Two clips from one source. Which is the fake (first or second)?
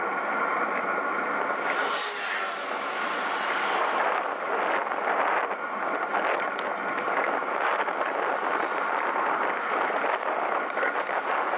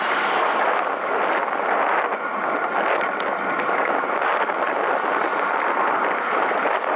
second